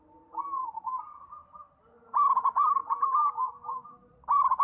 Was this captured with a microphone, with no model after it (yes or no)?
no